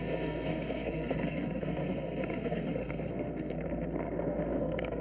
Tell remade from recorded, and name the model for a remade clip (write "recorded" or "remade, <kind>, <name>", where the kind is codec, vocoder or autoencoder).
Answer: remade, codec, SNAC